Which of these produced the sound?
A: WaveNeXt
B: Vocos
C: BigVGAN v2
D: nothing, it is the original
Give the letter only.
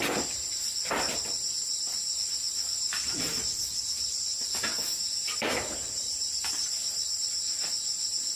C